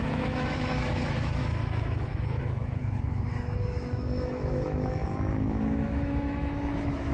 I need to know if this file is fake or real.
fake